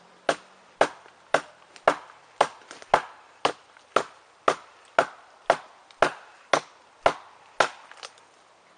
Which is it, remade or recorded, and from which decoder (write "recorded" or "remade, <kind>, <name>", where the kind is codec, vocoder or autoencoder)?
recorded